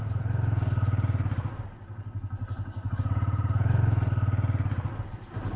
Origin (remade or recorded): recorded